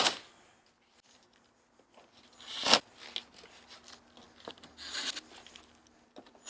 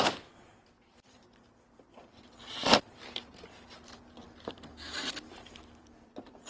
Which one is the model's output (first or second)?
second